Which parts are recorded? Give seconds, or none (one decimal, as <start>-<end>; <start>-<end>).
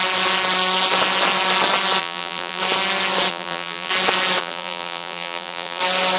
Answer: 0.0-2.0; 2.6-3.3; 3.9-4.4; 5.8-6.2